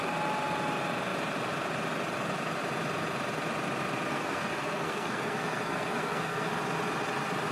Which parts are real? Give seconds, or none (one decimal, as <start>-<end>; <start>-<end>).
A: 0.0-4.1; 6.5-7.5